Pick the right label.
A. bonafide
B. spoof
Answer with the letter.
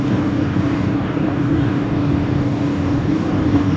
B